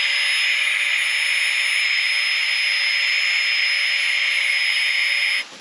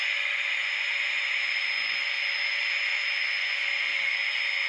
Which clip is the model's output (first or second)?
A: second